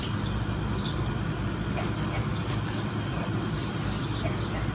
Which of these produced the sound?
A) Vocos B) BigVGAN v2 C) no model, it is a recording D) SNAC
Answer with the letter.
C